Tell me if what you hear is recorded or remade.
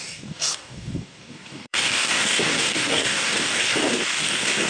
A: remade